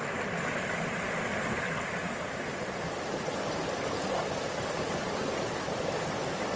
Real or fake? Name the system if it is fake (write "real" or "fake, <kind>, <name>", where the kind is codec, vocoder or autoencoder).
real